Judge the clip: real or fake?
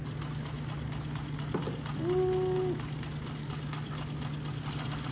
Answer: real